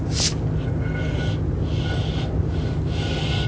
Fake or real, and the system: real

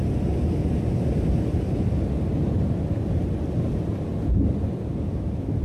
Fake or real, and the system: real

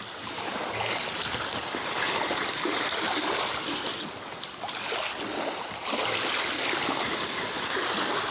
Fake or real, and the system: real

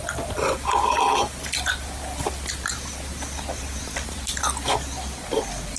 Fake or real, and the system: real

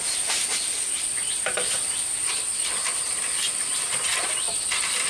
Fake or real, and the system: real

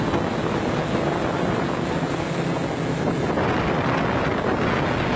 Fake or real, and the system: real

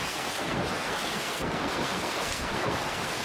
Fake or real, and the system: fake, codec, SNAC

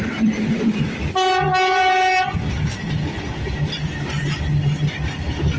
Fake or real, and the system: real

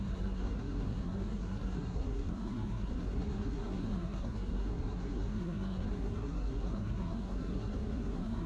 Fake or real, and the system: fake, codec, SNAC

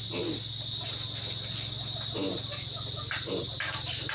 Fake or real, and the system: real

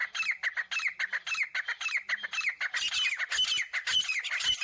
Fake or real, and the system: real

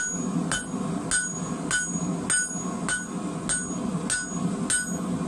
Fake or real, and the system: real